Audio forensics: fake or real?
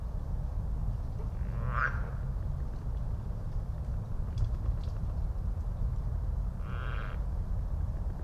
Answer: fake